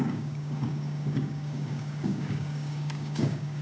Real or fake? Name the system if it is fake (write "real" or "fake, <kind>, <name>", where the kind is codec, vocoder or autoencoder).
fake, codec, DAC